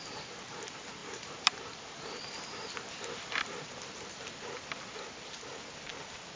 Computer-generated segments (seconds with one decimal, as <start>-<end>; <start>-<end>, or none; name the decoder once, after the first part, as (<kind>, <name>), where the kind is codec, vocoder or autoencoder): 1.0-4.4 (vocoder, BigVGAN v2)